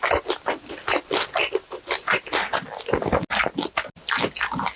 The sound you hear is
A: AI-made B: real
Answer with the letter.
B